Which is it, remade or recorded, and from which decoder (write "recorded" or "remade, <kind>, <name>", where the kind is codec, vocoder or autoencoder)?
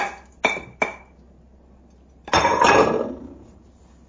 recorded